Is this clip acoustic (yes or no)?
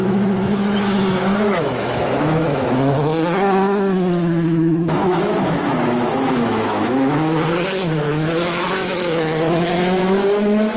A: no